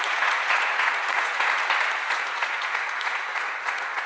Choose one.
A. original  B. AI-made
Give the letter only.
B